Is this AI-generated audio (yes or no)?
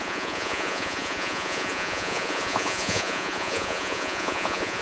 yes